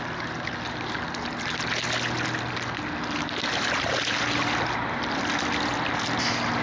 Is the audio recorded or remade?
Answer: recorded